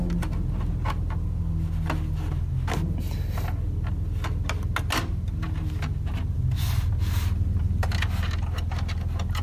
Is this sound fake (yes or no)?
no